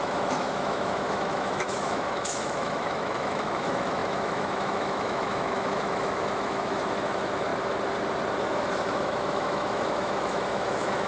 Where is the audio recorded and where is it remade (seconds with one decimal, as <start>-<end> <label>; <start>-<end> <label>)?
0.0-7.5 remade; 7.5-8.4 recorded; 8.4-11.1 remade